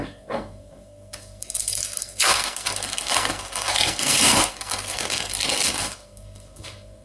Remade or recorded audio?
remade